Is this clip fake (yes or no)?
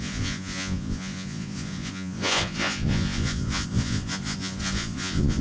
yes